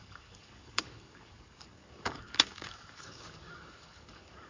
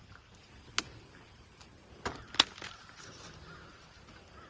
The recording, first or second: second